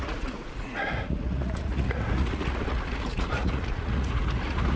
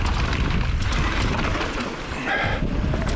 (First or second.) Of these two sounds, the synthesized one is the first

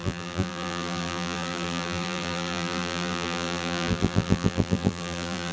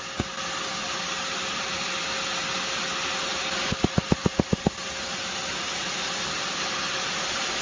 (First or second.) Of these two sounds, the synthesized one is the first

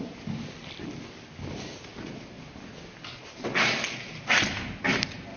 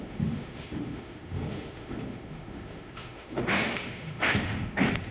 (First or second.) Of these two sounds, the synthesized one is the second